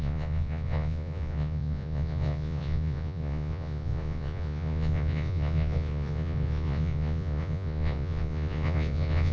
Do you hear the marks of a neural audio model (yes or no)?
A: yes